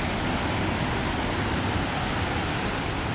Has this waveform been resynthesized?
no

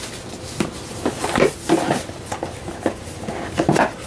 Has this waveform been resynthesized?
no